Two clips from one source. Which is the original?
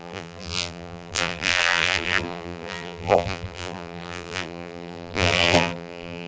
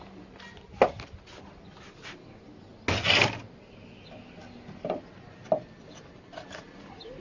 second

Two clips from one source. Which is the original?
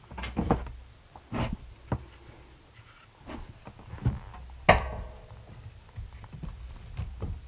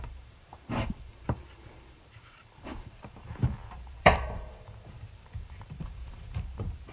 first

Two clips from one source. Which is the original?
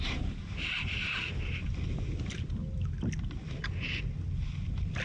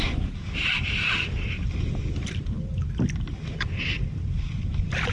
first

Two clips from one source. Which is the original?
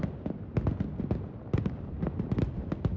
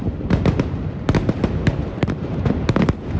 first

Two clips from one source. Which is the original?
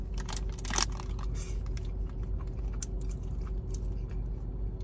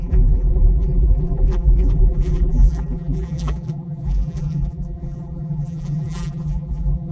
first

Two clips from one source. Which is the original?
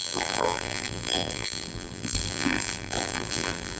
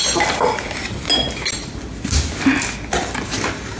second